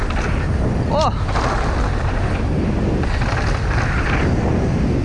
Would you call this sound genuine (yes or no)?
yes